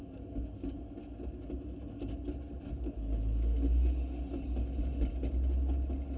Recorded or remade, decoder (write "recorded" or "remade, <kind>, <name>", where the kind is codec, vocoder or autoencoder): recorded